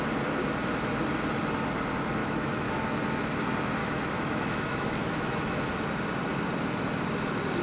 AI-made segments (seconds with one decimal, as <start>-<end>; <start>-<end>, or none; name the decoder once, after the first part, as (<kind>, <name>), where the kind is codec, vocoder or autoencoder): 2.2-2.8 (autoencoder, DAC-VAE); 3.8-5.7